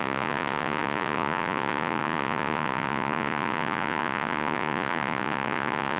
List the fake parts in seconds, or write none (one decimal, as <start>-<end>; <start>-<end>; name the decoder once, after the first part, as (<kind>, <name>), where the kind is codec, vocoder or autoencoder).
0.0-6.0 (vocoder, Vocos)